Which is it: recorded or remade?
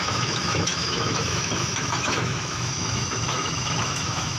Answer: remade